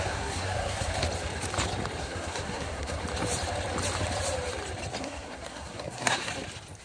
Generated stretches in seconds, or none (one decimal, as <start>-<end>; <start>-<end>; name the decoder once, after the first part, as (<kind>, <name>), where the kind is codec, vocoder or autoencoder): 0.0-0.9 (codec, SNAC); 2.0-3.0; 5.0-6.3